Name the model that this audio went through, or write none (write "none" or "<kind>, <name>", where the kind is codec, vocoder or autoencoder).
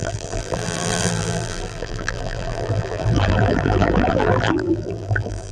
vocoder, BigVGAN v2